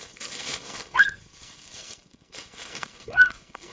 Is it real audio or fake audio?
fake